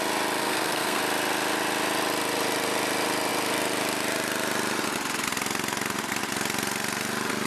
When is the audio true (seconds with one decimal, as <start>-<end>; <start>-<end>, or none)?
0.0-0.4; 1.0-7.5